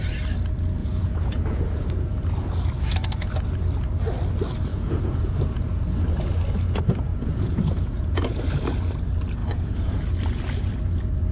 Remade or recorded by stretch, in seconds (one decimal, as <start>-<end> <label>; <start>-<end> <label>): 0.0-0.8 recorded; 0.8-2.2 remade; 2.2-4.7 recorded; 4.7-5.8 remade; 5.8-7.1 recorded; 7.1-8.4 remade; 8.4-9.4 recorded; 9.4-10.0 remade; 10.0-11.3 recorded